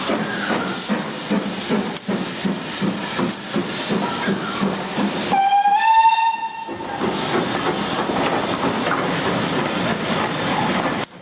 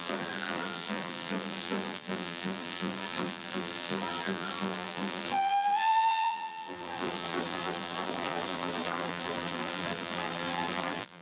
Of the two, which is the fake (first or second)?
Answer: second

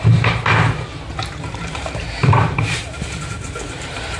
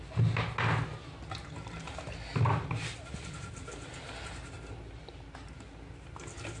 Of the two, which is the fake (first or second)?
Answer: first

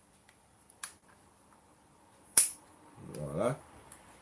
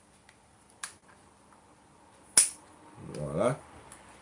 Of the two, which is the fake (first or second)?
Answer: first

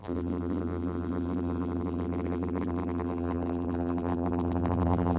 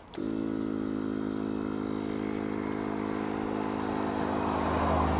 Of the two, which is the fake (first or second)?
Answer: first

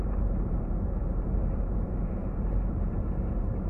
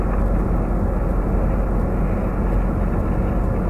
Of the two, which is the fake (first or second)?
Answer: first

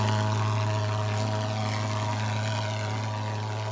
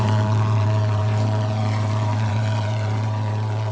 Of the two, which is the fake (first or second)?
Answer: second